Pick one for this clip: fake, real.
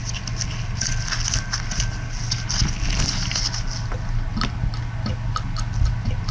real